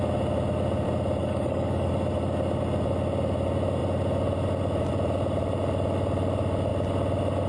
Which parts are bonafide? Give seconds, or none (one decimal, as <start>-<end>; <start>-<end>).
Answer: 0.0-1.2; 1.9-7.5